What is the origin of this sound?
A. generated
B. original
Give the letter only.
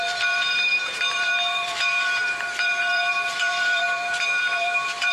A